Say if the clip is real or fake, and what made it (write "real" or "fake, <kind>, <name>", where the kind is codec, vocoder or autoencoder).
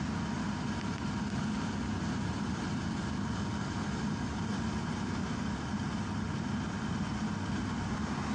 real